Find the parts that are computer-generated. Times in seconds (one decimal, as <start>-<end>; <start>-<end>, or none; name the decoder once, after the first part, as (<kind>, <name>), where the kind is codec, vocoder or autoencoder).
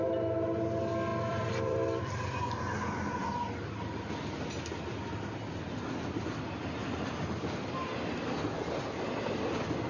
1.1-2.6 (vocoder, BigVGAN v2); 6.8-7.7